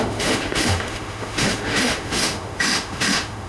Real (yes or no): no